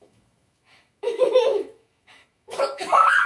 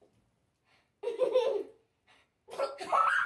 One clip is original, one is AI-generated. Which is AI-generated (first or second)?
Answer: first